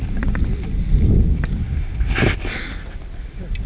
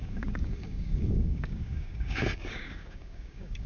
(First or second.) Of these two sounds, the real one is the first